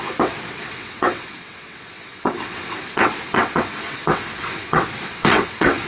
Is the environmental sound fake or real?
fake